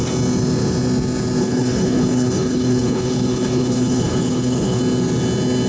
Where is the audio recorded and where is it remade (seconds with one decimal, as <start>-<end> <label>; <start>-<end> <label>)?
0.0-1.4 recorded; 1.4-4.8 remade; 4.8-5.7 recorded